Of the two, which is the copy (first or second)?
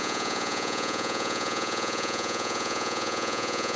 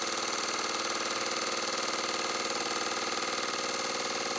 first